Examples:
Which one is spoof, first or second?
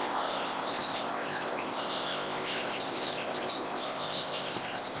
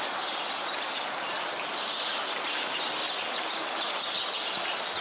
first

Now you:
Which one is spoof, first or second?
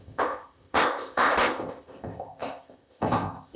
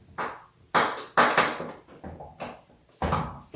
first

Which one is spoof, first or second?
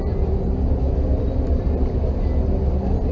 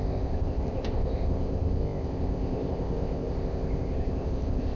second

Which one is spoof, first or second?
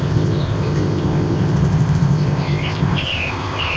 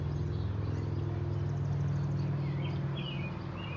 first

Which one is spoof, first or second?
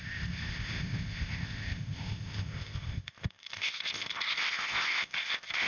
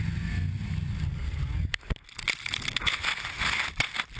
first